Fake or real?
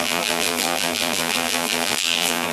fake